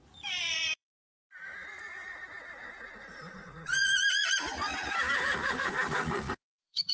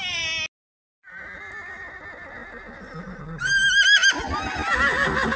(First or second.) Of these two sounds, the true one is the second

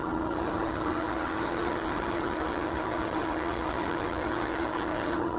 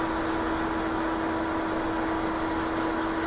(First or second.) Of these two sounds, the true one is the second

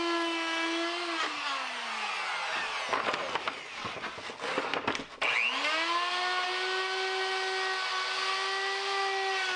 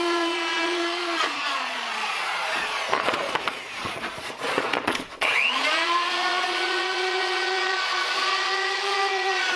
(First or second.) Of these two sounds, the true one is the first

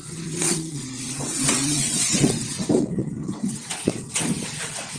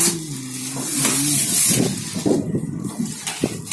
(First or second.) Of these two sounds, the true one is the second